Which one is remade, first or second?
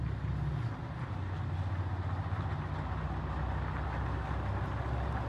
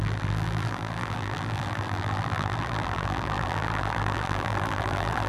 second